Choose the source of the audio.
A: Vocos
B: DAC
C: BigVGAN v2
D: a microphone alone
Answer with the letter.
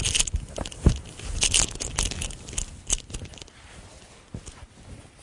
D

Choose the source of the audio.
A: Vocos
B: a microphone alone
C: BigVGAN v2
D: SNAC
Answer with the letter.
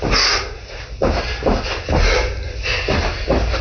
B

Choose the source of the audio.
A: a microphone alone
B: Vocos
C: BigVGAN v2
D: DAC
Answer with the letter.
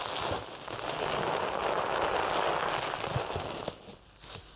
A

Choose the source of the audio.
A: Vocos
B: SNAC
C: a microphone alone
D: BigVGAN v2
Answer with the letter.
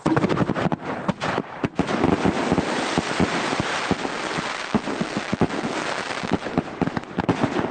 C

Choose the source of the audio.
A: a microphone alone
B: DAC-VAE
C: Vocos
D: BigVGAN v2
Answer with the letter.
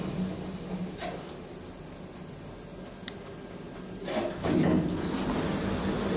A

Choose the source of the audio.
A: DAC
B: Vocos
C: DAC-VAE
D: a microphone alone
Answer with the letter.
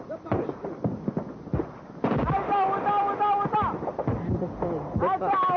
D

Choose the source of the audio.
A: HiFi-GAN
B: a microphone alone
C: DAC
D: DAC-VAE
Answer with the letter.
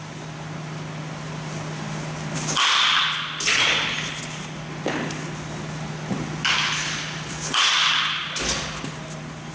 B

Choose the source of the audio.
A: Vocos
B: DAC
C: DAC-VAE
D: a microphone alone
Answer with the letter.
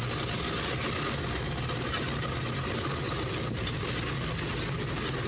D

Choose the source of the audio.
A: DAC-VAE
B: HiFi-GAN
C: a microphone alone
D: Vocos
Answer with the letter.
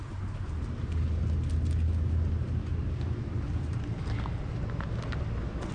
C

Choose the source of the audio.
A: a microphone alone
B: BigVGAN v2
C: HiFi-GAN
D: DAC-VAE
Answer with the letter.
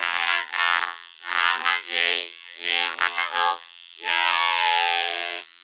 B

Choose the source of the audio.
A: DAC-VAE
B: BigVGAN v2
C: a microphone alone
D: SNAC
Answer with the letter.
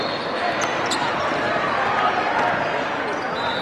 C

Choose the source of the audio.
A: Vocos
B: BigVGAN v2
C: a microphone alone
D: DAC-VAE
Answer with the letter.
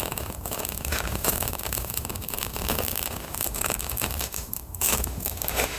D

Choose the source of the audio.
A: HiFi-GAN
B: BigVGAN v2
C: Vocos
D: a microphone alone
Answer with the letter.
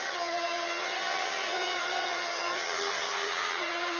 A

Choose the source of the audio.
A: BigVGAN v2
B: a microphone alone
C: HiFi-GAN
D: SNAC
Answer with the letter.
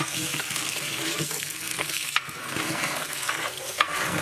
D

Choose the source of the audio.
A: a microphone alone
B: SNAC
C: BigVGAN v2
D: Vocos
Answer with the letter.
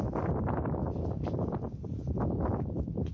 A